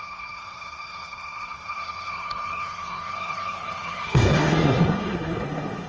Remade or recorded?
remade